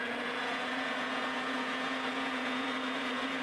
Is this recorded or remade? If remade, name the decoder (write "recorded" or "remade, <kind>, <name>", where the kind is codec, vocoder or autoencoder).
remade, vocoder, Vocos